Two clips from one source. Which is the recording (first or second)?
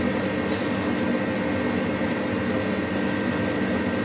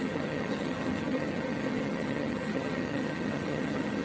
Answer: first